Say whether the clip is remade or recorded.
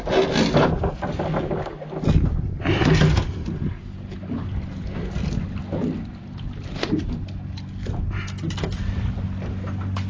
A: recorded